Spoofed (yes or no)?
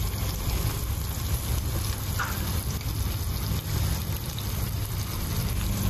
no